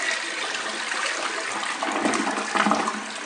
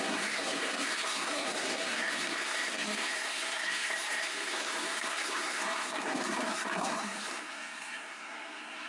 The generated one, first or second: second